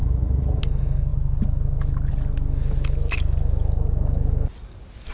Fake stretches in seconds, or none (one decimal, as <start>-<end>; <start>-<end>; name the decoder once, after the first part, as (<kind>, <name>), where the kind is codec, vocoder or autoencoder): 0.0-0.6 (vocoder, Vocos)